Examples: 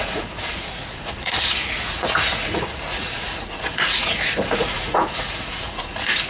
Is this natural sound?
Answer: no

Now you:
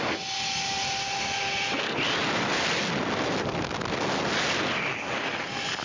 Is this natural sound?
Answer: yes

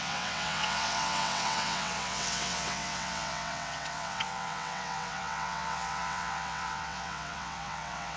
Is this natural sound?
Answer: no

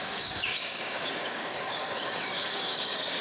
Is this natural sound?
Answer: no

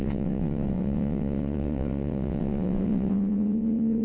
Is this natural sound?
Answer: no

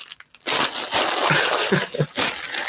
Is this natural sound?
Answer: yes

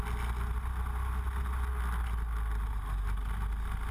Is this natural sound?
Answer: yes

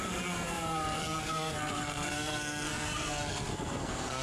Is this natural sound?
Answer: no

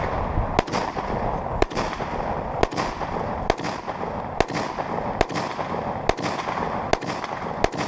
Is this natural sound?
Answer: yes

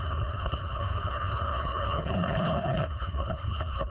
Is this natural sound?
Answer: no